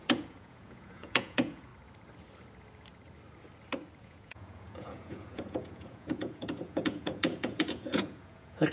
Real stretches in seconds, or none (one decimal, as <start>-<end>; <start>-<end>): 1.7-4.0